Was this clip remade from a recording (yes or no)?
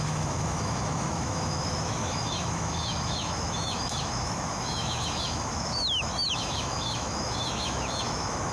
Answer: yes